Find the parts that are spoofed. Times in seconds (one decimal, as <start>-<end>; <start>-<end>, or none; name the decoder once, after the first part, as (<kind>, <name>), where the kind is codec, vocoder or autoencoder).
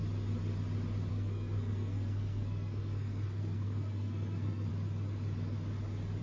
1.1-4.7 (codec, SNAC)